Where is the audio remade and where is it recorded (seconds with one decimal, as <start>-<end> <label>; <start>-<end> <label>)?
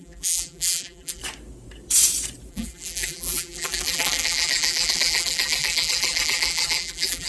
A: 0.0-1.2 remade; 1.2-2.5 recorded; 2.5-7.3 remade